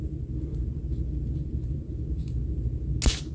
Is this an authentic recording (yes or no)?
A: yes